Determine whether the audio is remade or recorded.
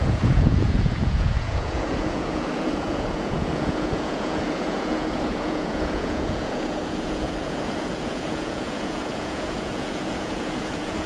remade